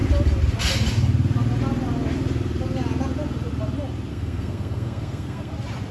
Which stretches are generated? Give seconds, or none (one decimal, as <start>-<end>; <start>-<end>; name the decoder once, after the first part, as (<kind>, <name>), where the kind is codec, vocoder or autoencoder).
4.1-5.5 (codec, SNAC)